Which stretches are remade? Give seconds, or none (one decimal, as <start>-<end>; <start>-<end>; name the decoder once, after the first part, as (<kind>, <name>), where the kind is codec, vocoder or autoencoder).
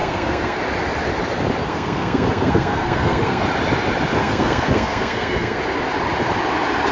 0.0-0.6 (codec, SNAC); 1.6-3.4; 4.2-5.6